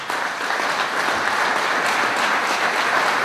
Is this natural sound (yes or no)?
yes